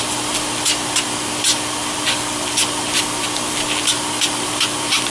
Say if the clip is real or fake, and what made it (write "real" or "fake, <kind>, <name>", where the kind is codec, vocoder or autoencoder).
real